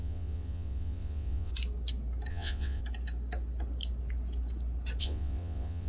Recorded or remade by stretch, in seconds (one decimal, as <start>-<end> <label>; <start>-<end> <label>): 0.0-1.5 remade; 1.5-2.3 recorded; 2.3-2.8 remade; 2.8-5.0 recorded; 5.0-5.9 remade